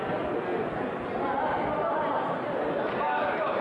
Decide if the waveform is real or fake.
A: real